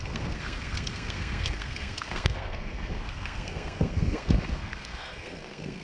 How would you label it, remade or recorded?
remade